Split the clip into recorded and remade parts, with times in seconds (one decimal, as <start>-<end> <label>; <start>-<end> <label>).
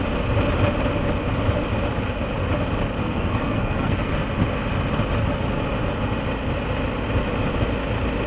0.0-3.0 recorded; 3.0-4.1 remade; 4.1-8.3 recorded